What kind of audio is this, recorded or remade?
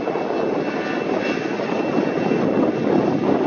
recorded